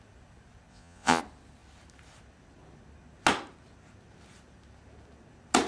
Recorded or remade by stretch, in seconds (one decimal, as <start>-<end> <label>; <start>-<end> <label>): 0.0-0.7 recorded; 0.7-1.2 remade; 1.2-5.7 recorded